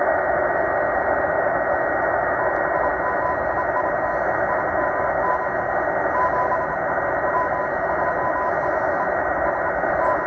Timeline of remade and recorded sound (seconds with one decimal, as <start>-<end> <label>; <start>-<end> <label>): 0.0-10.3 recorded

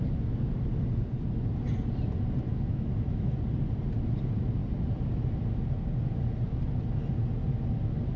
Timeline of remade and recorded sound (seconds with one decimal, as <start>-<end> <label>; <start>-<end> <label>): 0.0-2.5 recorded; 2.5-3.4 remade; 3.4-8.2 recorded

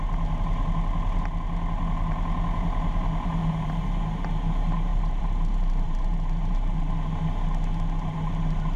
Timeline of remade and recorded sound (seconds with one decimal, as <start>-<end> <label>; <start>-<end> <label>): 0.0-4.9 recorded; 4.9-6.9 remade; 6.9-8.8 recorded